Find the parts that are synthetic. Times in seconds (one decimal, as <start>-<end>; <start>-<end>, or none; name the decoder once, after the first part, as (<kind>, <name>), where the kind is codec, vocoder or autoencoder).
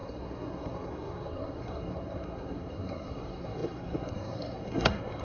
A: 0.0-5.2 (codec, SNAC)